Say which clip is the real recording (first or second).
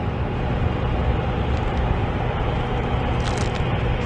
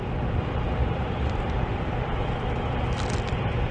first